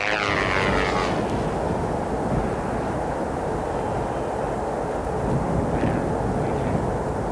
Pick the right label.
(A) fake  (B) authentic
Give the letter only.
B